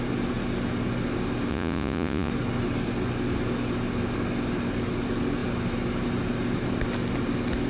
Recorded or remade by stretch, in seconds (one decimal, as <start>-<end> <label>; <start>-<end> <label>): 0.0-1.5 recorded; 1.5-2.3 remade; 2.3-7.7 recorded

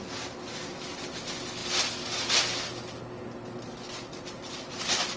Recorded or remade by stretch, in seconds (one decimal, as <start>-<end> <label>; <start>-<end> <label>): 0.0-5.2 recorded

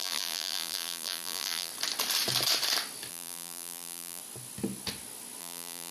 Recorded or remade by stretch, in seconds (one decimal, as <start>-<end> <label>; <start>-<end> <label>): 0.0-1.7 remade; 1.7-3.1 recorded; 3.1-4.2 remade; 4.2-5.4 recorded; 5.4-5.9 remade